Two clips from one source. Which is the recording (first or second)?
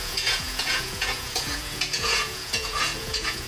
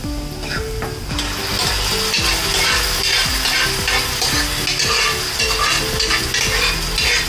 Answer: second